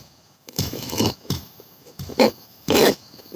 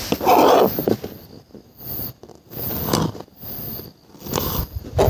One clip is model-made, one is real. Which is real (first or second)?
second